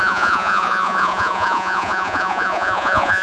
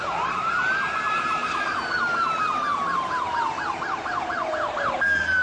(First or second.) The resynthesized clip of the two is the first